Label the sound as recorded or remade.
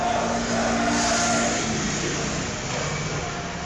recorded